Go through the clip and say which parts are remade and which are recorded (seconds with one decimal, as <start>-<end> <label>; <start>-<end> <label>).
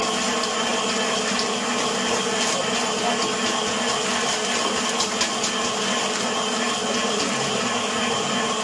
0.0-8.6 recorded